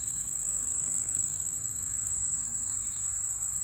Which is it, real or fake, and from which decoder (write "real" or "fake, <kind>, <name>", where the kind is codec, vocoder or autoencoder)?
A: fake, codec, SNAC